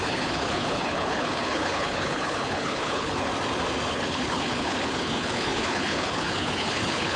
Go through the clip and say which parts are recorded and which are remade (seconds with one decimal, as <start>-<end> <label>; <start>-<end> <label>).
0.0-3.3 remade; 3.3-3.9 recorded; 3.9-7.2 remade